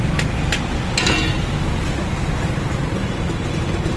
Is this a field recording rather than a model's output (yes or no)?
yes